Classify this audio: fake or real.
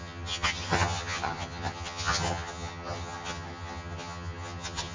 fake